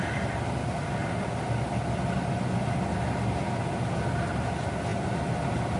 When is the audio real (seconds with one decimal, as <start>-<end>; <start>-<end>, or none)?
0.0-1.0; 2.9-5.8